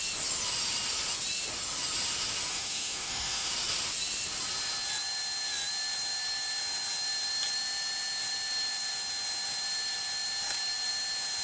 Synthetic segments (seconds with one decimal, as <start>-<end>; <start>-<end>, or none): 2.5-3.5